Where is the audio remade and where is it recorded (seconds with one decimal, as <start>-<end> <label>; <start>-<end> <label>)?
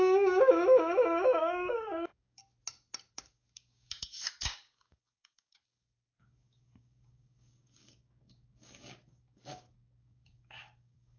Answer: 0.0-2.4 remade; 2.4-3.1 recorded; 3.1-11.2 remade